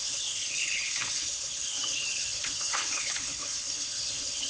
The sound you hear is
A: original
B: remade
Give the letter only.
B